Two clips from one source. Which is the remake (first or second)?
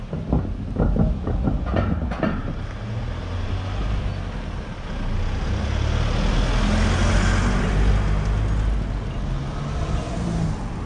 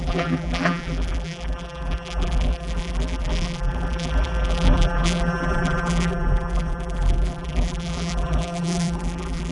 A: second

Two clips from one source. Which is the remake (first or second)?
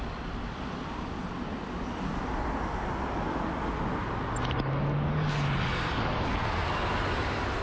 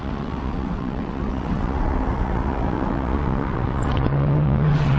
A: second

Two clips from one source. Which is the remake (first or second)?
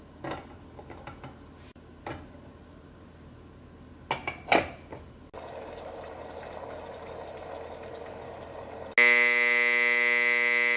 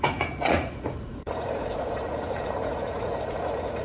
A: second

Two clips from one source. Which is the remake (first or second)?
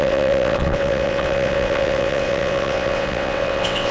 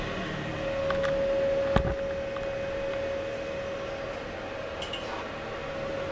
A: first